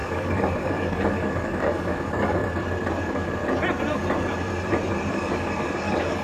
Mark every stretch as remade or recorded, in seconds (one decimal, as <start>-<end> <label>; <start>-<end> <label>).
0.0-2.4 remade; 2.4-3.0 recorded; 3.0-3.4 remade; 3.4-5.1 recorded; 5.1-6.2 remade